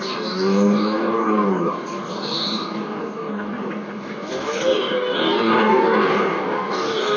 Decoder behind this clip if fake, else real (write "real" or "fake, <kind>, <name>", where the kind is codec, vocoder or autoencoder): fake, codec, DAC